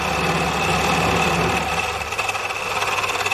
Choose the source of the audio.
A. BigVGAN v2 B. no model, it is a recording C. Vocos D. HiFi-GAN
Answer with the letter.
B